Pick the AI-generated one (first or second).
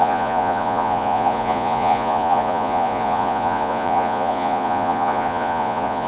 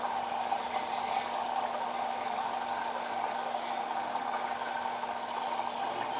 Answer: first